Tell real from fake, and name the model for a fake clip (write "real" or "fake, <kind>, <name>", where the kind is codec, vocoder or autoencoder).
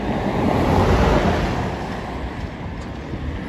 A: real